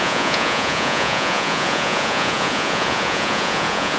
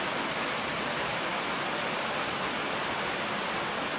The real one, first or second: second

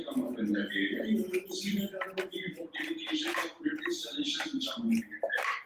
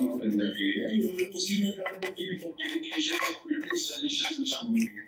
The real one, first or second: first